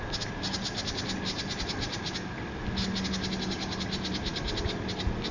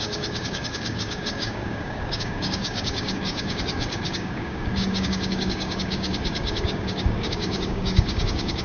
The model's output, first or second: second